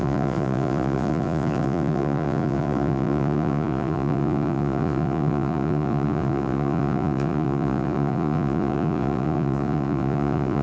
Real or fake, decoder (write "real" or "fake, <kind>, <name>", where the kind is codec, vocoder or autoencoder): fake, vocoder, Vocos